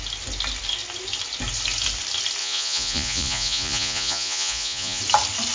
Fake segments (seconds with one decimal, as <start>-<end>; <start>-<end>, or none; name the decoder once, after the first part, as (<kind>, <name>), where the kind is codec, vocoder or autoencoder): 2.4-5.0 (vocoder, Vocos)